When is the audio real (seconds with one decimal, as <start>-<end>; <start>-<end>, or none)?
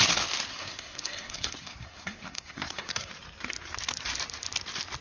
0.0-0.5; 3.1-5.0